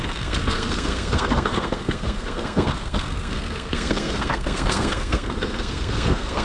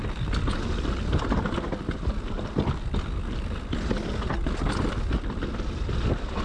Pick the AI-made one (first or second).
first